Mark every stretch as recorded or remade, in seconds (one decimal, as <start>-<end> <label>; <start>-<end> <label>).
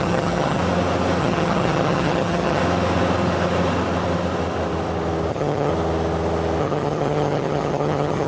0.0-0.6 remade; 0.6-1.2 recorded; 1.2-2.6 remade; 2.6-5.3 recorded; 5.3-5.7 remade; 5.7-6.6 recorded; 6.6-8.3 remade